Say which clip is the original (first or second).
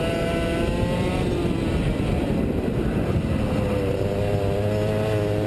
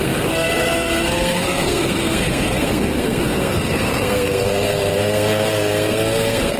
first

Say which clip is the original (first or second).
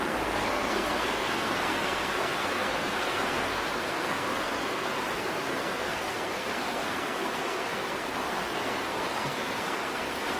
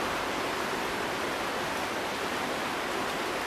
second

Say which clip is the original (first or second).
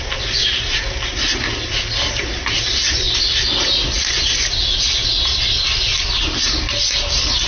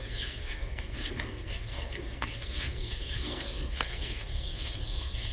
first